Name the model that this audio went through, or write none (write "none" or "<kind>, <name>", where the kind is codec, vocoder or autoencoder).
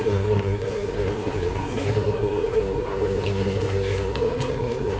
codec, SNAC